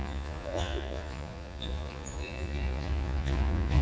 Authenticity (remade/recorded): remade